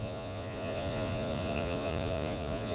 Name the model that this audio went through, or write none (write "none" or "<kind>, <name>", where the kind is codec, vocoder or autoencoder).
vocoder, Vocos